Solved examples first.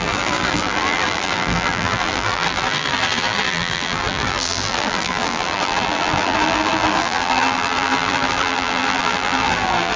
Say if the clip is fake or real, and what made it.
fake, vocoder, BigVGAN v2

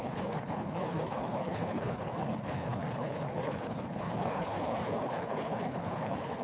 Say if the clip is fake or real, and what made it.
fake, codec, HILCodec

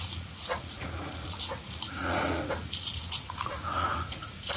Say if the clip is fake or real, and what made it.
fake, vocoder, Vocos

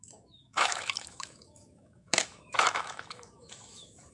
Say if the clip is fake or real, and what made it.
fake, autoencoder, DAC-VAE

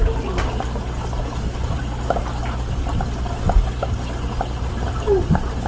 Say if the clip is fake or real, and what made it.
real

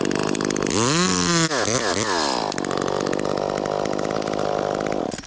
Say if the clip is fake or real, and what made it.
real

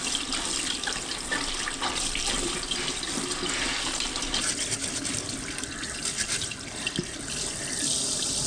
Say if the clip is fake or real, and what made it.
real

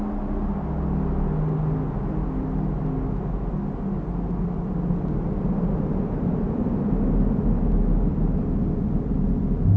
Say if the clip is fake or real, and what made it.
real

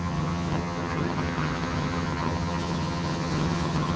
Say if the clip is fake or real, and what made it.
fake, vocoder, HiFi-GAN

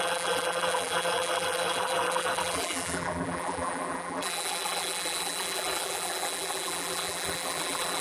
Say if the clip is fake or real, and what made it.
fake, vocoder, BigVGAN v2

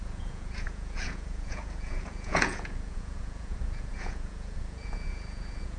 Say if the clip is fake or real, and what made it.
fake, vocoder, Vocos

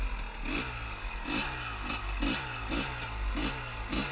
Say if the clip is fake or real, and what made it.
real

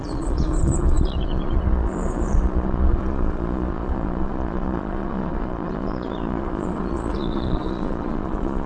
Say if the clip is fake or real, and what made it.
fake, vocoder, Vocos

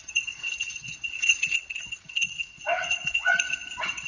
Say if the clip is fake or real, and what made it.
fake, vocoder, WaveNeXt